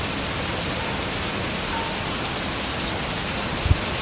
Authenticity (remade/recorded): recorded